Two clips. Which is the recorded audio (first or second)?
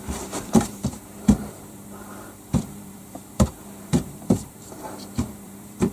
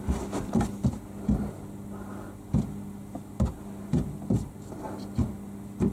second